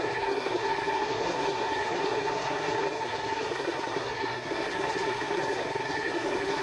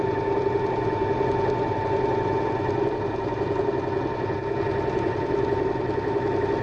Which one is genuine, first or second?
second